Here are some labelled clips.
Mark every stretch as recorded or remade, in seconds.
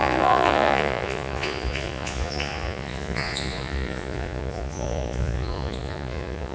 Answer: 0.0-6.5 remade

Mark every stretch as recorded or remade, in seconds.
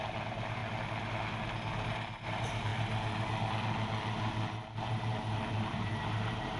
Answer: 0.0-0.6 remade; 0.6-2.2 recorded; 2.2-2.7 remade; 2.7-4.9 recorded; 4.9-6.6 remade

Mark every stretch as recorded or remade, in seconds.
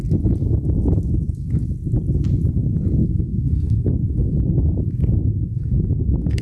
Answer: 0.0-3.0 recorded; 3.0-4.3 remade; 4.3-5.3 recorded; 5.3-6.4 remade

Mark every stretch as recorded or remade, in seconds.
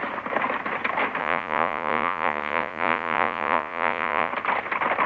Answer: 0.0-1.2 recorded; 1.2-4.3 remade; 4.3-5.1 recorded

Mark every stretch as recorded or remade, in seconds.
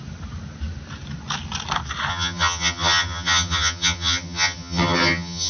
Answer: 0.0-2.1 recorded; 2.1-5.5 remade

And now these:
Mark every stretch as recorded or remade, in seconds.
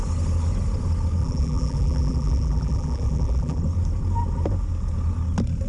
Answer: 0.0-1.2 recorded; 1.2-3.6 remade; 3.6-5.7 recorded